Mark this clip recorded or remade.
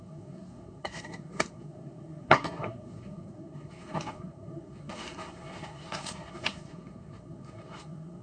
remade